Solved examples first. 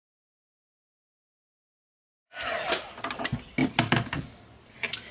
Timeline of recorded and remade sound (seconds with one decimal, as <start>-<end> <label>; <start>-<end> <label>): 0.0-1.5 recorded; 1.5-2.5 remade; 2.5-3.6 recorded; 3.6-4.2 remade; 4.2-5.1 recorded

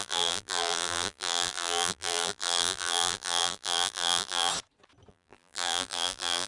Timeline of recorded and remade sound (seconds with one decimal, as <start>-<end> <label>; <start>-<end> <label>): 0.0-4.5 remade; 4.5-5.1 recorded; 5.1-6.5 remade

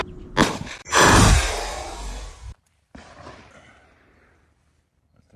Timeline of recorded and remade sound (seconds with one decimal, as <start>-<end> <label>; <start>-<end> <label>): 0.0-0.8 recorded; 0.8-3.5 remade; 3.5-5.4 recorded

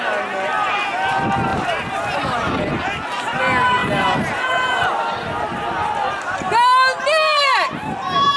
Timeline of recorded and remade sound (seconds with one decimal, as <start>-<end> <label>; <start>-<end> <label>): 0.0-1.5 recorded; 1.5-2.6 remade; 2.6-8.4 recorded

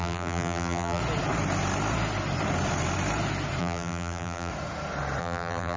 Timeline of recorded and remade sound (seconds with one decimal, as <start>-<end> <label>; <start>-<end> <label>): 0.0-1.0 remade; 1.0-3.6 recorded; 3.6-4.5 remade; 4.5-5.2 recorded; 5.2-5.8 remade